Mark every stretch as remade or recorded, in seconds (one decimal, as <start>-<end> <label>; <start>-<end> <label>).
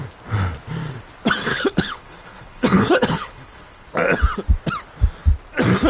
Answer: 0.0-1.5 recorded; 1.5-3.9 remade; 3.9-5.9 recorded